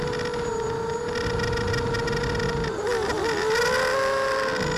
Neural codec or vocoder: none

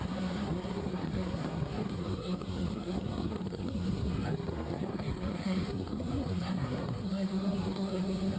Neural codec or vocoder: codec, SNAC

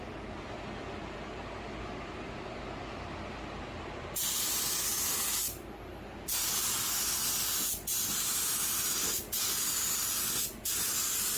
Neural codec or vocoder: none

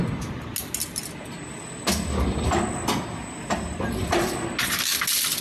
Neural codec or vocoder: none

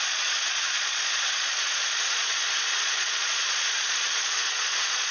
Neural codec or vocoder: vocoder, Vocos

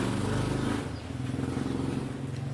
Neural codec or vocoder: none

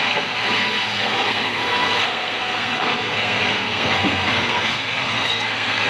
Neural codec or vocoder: codec, SNAC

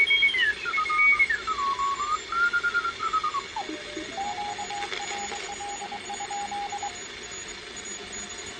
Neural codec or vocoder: none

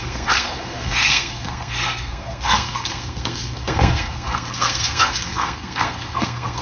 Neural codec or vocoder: codec, SNAC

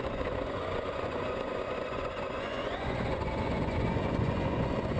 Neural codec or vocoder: vocoder, Vocos